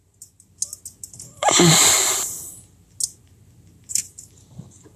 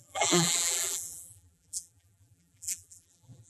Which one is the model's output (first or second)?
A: second